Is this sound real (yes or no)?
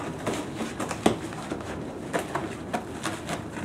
yes